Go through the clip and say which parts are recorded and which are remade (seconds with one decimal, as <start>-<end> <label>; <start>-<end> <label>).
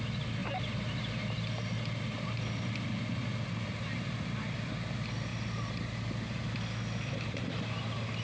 0.0-0.4 recorded; 0.4-4.7 remade; 4.7-8.2 recorded